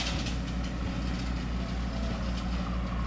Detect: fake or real real